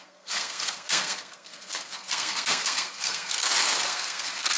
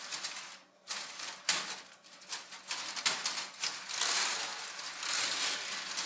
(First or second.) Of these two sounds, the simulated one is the first